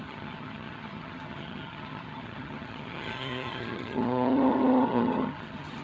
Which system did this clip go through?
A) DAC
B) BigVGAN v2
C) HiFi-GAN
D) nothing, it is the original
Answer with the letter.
C